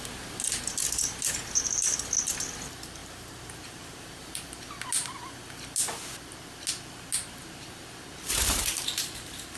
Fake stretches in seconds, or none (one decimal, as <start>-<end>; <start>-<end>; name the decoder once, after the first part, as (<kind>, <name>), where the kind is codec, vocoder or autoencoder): 3.0-4.6 (vocoder, BigVGAN v2)